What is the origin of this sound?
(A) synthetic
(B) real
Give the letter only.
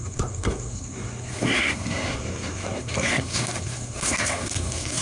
A